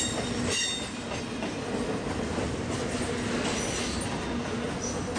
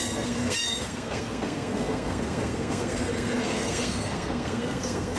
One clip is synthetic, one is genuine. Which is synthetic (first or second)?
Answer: second